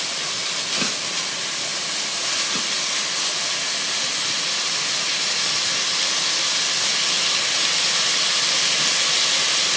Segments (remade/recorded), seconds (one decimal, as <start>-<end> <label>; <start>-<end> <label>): 0.0-1.7 recorded; 1.7-2.3 remade; 2.3-9.8 recorded